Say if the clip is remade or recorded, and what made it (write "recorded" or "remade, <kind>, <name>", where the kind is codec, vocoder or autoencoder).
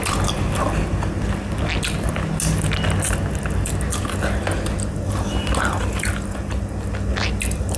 recorded